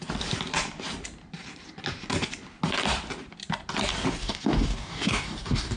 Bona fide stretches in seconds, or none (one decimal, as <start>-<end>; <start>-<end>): 0.0-4.2